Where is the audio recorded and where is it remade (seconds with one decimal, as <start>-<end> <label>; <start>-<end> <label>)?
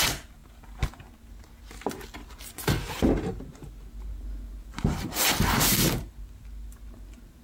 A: 0.0-4.6 recorded; 4.6-5.4 remade; 5.4-7.4 recorded